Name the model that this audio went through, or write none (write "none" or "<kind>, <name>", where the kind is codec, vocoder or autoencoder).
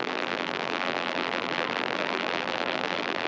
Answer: vocoder, BigVGAN v2